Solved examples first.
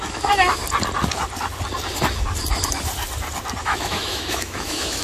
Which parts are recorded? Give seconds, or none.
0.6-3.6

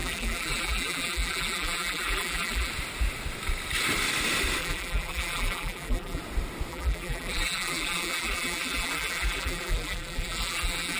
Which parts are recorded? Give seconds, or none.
2.7-4.6; 6.2-6.7

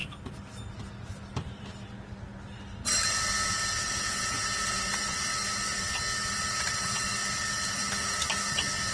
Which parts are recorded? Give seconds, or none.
0.0-3.5; 5.3-8.9

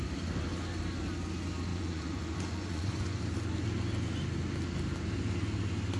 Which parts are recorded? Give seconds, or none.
0.0-1.7; 3.2-6.0